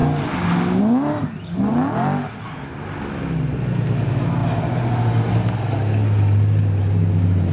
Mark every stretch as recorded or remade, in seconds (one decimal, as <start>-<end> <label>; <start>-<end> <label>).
0.0-7.5 recorded